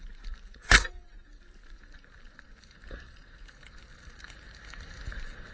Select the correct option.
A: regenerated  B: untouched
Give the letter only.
A